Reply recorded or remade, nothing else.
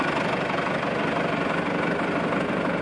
recorded